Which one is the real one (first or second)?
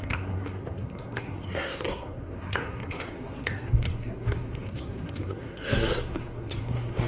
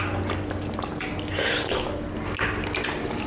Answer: second